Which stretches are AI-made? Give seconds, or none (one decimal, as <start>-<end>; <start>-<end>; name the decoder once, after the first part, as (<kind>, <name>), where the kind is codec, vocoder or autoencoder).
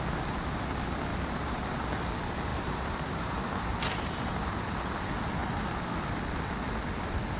1.1-1.6 (vocoder, BigVGAN v2); 2.5-5.0